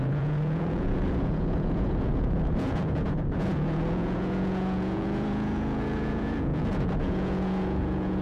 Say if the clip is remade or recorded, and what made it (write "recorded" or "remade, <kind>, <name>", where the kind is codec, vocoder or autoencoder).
remade, vocoder, Vocos